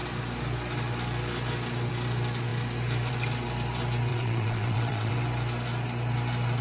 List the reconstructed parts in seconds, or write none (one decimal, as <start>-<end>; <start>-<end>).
4.1-5.1